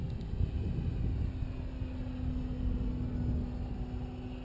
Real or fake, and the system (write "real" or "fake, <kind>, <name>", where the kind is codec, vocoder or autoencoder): real